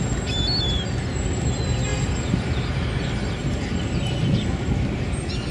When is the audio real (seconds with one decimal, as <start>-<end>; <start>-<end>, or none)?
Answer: 0.0-5.5